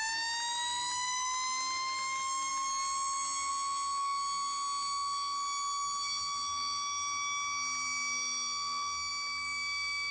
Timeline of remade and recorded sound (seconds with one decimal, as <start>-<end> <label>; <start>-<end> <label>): 0.0-10.1 recorded